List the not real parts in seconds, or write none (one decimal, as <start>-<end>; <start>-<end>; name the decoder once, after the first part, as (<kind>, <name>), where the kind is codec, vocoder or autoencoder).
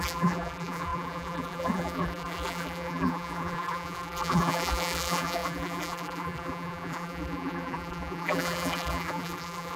0.0-9.8 (vocoder, BigVGAN v2)